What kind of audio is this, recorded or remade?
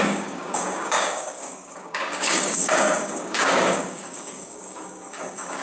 remade